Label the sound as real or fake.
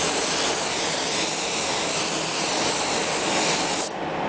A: real